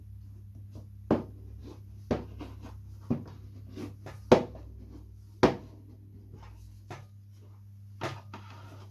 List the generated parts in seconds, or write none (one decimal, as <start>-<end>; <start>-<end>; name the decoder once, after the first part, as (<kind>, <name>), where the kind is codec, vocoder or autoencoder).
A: none